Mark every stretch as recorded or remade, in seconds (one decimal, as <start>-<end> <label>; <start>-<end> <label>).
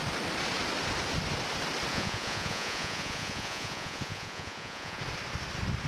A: 0.0-1.9 recorded; 1.9-5.0 remade; 5.0-5.9 recorded